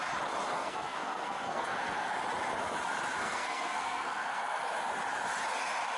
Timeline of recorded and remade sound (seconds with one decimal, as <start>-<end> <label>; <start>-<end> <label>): 0.0-0.5 recorded; 0.5-2.1 remade; 2.1-3.2 recorded; 3.2-4.6 remade; 4.6-6.0 recorded